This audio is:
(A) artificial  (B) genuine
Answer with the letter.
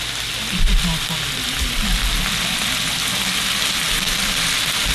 B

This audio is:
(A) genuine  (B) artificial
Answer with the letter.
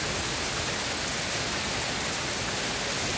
A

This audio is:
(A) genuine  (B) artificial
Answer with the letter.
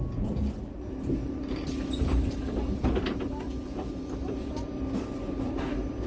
B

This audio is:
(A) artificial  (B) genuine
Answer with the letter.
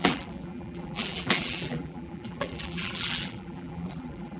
A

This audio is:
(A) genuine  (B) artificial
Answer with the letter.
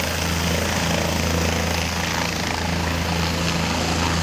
A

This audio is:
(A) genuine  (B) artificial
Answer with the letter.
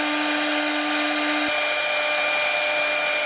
A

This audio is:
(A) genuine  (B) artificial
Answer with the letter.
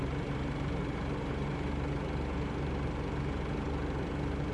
B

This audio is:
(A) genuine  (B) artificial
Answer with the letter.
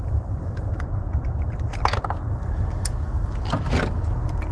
B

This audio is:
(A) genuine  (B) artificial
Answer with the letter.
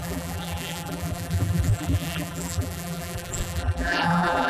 B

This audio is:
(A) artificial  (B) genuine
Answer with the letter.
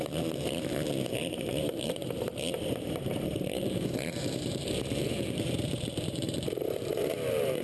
A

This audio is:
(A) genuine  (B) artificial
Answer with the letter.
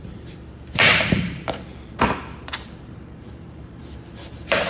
B